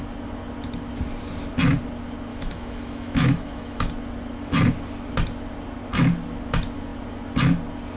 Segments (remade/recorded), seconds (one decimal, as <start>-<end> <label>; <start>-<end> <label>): 0.0-2.3 recorded; 2.3-3.9 remade; 3.9-8.0 recorded